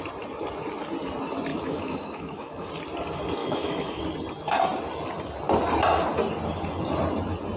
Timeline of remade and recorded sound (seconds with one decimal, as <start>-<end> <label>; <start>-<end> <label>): 0.0-1.5 recorded; 1.5-2.7 remade; 2.7-3.4 recorded; 3.4-4.0 remade; 4.0-7.6 recorded